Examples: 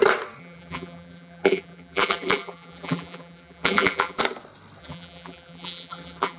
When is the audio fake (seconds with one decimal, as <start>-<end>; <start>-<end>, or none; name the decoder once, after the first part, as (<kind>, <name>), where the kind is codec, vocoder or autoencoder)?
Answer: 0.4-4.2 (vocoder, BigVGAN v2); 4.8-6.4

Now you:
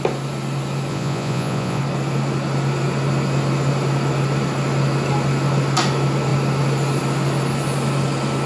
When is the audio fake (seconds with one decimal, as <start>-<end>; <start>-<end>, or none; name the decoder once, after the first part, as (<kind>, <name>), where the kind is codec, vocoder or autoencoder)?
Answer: 0.9-1.8 (vocoder, Vocos)

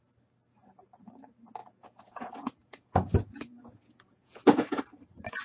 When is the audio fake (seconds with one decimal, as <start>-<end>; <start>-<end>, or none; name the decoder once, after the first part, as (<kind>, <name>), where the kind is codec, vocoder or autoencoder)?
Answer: 1.6-4.8 (vocoder, Vocos)